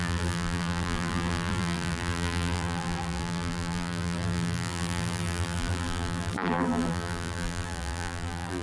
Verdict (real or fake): fake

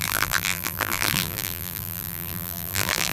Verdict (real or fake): fake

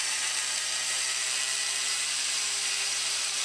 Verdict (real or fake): fake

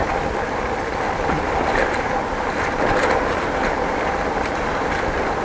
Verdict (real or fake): fake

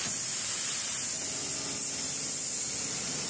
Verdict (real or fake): real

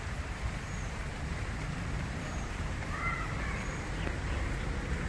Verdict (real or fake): fake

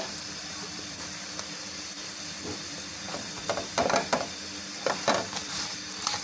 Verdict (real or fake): fake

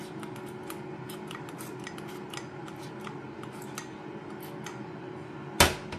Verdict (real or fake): real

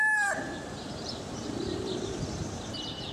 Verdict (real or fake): fake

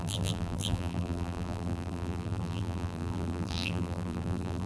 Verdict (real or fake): fake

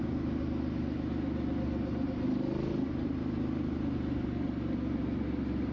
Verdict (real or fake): real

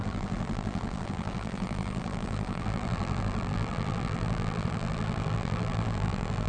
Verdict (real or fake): fake